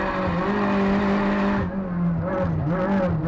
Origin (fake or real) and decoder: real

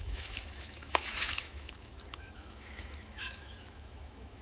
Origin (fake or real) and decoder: fake, autoencoder, DAC-VAE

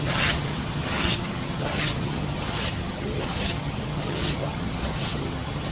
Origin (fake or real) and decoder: fake, vocoder, HiFi-GAN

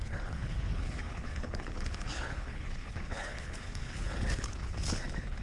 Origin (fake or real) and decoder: fake, codec, HILCodec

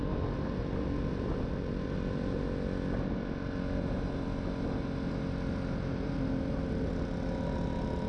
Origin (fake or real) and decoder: real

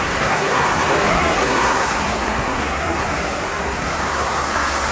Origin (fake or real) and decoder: fake, codec, SNAC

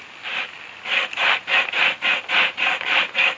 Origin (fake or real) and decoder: real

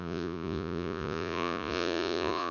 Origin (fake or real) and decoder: fake, vocoder, Vocos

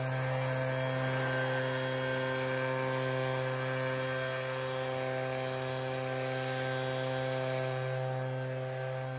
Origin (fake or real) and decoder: real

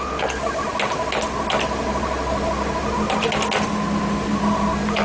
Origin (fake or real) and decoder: real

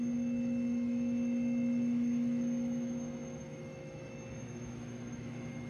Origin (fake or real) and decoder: fake, autoencoder, DAC-VAE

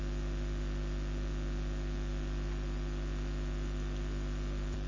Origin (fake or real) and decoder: real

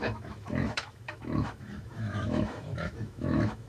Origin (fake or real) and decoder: fake, autoencoder, DAC-VAE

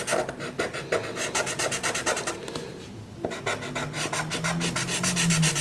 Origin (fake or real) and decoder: real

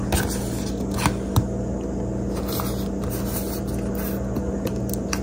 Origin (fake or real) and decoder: real